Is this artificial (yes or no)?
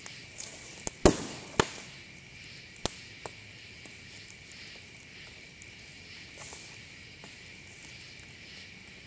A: no